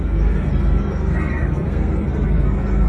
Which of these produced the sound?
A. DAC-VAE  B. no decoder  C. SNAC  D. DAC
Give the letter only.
C